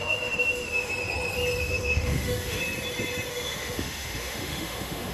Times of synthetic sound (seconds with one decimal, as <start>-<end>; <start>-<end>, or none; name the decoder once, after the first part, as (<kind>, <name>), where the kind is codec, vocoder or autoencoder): 0.0-0.9 (autoencoder, DAC-VAE); 1.6-2.6; 3.3-5.1